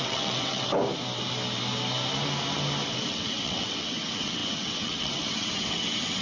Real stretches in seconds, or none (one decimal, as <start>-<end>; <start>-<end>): 0.7-2.9